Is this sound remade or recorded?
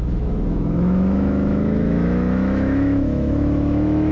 remade